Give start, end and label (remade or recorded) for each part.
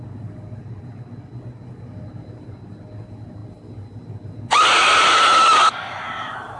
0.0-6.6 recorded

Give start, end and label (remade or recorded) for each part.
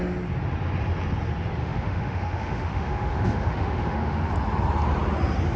0.0-1.6 recorded; 1.6-4.3 remade; 4.3-5.6 recorded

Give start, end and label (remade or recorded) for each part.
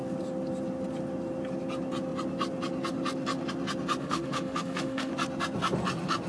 0.0-4.0 recorded; 4.0-5.1 remade; 5.1-6.3 recorded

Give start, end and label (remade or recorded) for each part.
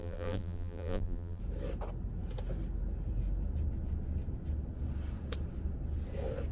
0.0-1.4 remade; 1.4-6.5 recorded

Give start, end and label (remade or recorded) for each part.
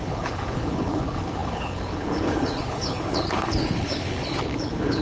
0.0-5.0 remade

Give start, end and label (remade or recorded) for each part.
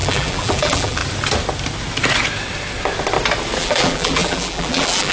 0.0-1.0 remade; 1.0-3.6 recorded; 3.6-5.1 remade